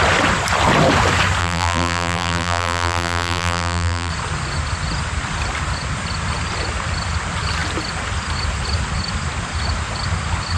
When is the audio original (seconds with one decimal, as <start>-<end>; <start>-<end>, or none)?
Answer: 0.0-1.4; 4.1-10.6